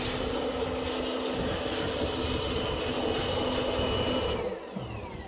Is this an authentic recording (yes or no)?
yes